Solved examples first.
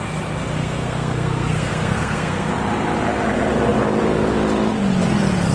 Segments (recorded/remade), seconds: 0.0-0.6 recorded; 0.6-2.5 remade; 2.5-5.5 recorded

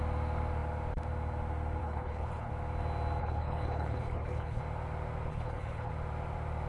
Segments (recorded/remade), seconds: 0.0-1.8 recorded; 1.8-2.5 remade; 2.5-3.2 recorded; 3.2-4.6 remade; 4.6-5.3 recorded; 5.3-5.9 remade; 5.9-6.7 recorded

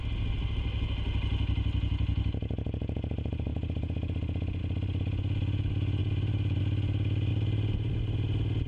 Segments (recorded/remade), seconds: 0.0-6.0 recorded; 6.0-6.6 remade; 6.6-7.3 recorded; 7.3-8.0 remade; 8.0-8.7 recorded

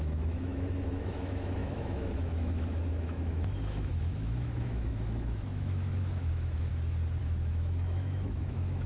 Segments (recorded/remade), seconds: 0.0-6.7 remade; 6.7-7.2 recorded; 7.2-8.9 remade

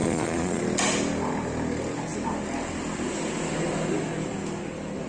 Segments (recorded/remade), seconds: 0.0-0.6 remade; 0.6-5.1 recorded

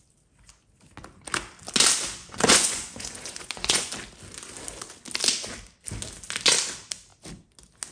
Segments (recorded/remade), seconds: 0.0-2.2 recorded; 2.2-3.9 remade; 3.9-7.9 recorded